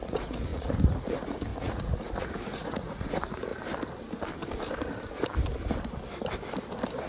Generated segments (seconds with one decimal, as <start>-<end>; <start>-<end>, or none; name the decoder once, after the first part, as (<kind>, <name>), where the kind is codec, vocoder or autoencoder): 0.0-3.5 (vocoder, Vocos)